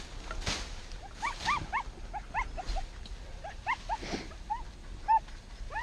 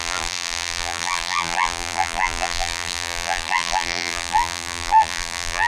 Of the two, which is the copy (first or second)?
second